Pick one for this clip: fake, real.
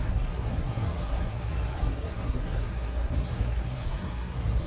fake